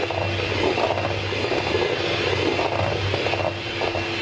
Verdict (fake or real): real